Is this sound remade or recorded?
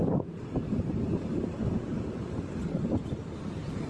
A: remade